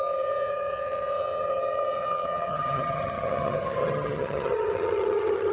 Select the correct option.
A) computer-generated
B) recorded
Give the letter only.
A